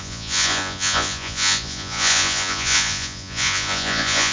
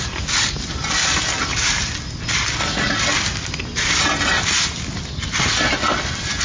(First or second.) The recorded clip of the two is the second